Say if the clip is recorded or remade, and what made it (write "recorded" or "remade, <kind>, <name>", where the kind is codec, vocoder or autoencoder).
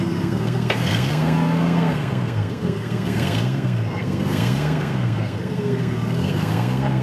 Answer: remade, codec, SNAC